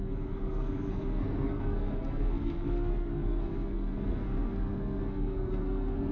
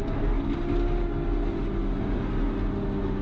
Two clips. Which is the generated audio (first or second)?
first